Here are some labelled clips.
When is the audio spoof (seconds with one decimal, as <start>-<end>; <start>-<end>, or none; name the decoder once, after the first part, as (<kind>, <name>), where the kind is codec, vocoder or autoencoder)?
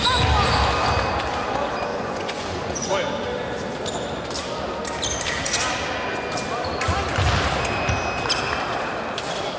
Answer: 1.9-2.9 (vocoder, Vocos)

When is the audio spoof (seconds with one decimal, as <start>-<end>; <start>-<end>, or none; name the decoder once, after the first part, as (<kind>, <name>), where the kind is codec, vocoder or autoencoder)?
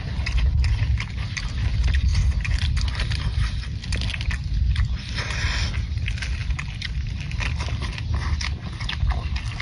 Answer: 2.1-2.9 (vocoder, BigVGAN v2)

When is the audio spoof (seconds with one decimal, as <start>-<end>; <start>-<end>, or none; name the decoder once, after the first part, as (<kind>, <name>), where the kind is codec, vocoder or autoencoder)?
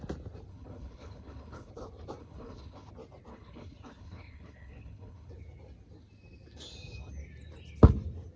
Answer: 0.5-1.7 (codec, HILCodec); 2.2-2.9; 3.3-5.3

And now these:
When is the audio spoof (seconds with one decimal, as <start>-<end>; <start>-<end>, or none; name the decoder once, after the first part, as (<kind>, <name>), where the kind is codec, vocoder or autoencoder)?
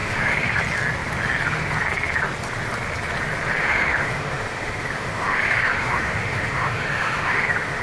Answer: 0.0-0.6 (autoencoder, DAC-VAE); 3.6-7.8